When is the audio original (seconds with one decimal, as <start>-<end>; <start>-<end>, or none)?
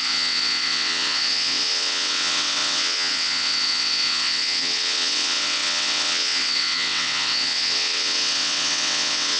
none